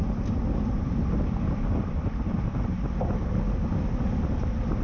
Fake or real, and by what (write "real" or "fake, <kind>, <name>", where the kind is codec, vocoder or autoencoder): real